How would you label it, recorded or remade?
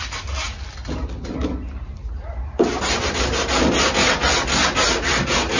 recorded